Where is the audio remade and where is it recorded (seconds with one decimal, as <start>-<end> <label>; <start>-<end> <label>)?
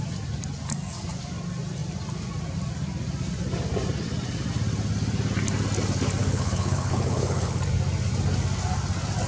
0.0-6.2 recorded; 6.2-7.6 remade; 7.6-9.3 recorded